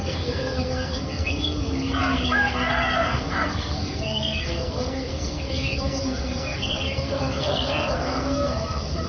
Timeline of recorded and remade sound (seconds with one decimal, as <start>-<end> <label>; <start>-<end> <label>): 0.0-9.1 remade